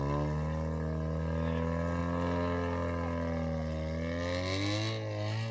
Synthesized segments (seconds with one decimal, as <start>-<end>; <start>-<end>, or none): none